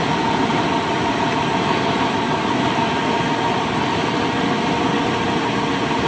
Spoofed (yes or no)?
no